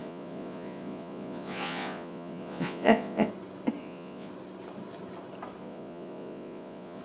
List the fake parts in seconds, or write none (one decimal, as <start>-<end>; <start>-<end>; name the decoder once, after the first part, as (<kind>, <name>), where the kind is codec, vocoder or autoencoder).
0.0-3.3 (vocoder, Vocos); 3.8-4.3; 5.6-7.0